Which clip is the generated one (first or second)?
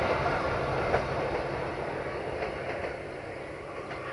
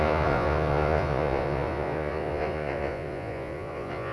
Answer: second